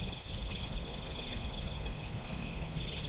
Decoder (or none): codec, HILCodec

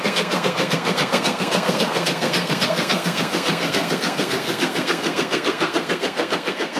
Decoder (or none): codec, SNAC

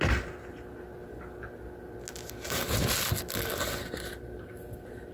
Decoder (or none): none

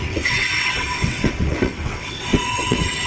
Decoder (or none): vocoder, WaveNeXt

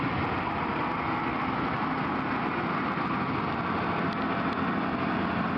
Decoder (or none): none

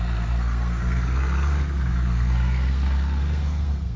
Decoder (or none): codec, SNAC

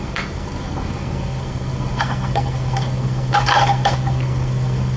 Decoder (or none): codec, SNAC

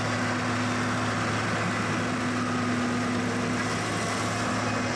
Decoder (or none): none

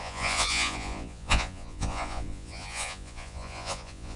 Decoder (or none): vocoder, Vocos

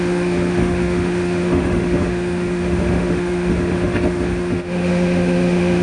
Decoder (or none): autoencoder, DAC-VAE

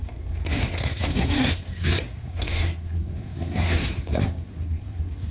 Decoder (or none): codec, SNAC